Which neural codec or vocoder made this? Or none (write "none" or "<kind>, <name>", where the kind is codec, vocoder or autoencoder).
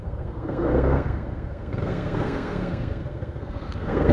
codec, SNAC